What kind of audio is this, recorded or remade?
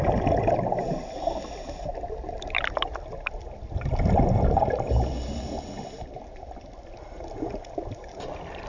recorded